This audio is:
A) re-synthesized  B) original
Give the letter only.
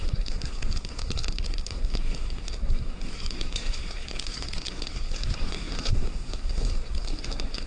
A